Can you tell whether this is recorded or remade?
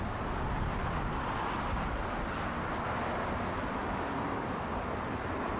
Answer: recorded